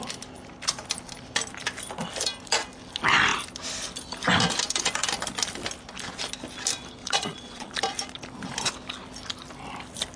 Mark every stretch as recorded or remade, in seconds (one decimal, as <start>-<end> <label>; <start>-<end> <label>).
0.0-7.0 recorded; 7.0-7.7 remade; 7.7-10.2 recorded